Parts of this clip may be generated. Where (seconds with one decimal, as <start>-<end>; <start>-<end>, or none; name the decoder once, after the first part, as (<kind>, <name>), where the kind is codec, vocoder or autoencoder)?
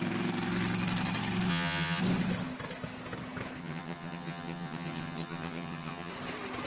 1.5-2.0 (vocoder, HiFi-GAN); 3.6-6.1